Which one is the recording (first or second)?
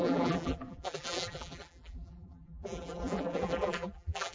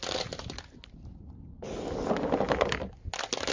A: second